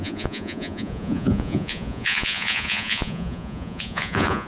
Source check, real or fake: fake